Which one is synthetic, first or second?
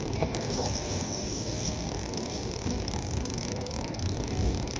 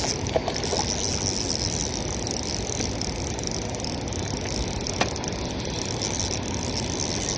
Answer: first